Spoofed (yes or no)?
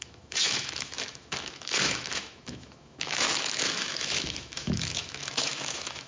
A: yes